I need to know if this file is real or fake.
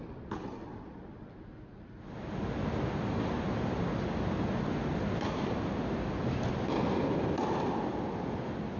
real